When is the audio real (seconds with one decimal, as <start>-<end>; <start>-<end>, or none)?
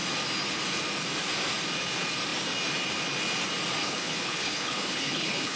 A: 0.0-3.8